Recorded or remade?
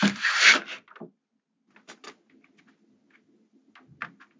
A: recorded